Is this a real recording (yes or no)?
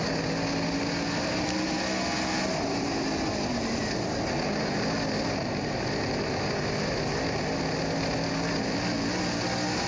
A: yes